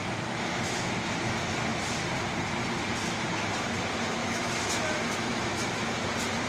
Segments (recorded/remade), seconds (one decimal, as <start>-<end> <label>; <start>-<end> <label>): 0.0-0.6 remade; 0.6-4.2 recorded; 4.2-5.9 remade; 5.9-6.5 recorded